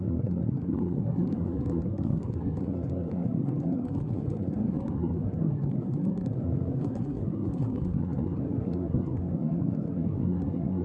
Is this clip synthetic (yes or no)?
yes